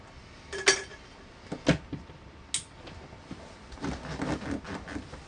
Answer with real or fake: real